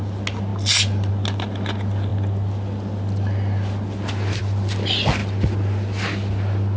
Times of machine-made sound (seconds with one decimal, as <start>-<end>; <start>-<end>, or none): none